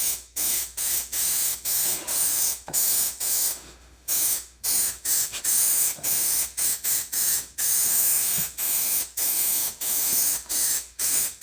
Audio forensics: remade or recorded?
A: remade